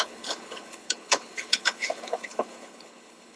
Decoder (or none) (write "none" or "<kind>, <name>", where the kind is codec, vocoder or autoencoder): codec, HILCodec